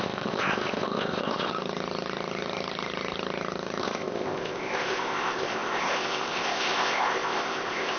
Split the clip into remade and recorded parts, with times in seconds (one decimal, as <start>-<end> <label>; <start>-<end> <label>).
0.0-1.5 remade; 1.5-3.8 recorded; 3.8-8.0 remade